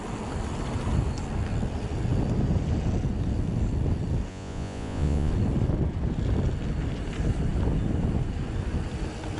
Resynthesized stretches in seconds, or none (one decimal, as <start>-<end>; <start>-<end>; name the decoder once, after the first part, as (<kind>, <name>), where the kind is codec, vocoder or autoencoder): 4.3-5.3 (vocoder, Vocos)